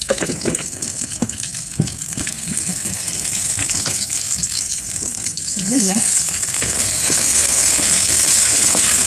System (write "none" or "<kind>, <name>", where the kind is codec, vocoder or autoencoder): codec, SNAC